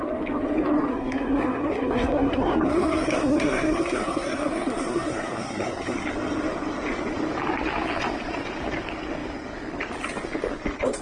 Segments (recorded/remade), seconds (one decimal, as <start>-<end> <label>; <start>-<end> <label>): 0.0-0.9 recorded; 0.9-6.1 remade; 6.1-11.0 recorded